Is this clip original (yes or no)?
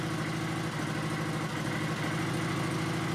yes